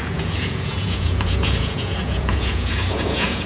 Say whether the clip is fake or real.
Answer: fake